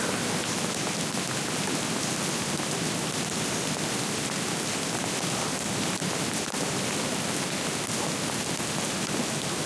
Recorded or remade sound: recorded